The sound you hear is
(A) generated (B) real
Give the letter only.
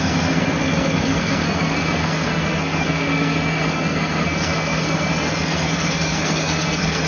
A